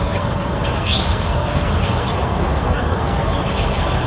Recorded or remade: remade